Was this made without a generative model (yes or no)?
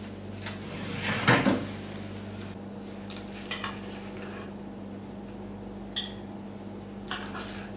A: yes